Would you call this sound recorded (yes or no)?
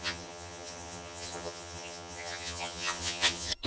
no